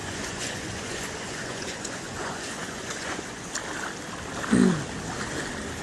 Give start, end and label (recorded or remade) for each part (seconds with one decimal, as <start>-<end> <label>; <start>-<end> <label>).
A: 0.0-3.5 remade; 3.5-5.8 recorded